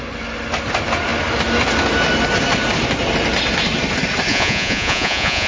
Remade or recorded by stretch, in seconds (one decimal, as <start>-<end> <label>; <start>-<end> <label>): 0.0-4.3 recorded; 4.3-5.5 remade